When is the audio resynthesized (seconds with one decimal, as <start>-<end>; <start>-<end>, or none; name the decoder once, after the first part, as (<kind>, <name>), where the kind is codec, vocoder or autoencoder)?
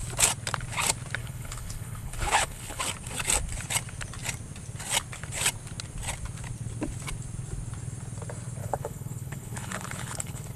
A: 1.2-2.8 (codec, HILCodec); 8.6-10.6